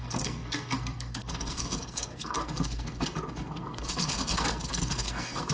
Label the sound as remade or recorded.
remade